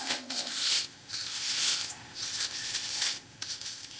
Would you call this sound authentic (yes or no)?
no